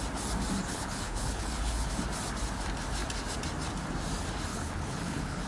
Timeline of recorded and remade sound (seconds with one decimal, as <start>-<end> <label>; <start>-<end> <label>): 0.0-0.7 recorded; 0.7-1.9 remade; 1.9-4.5 recorded; 4.5-5.5 remade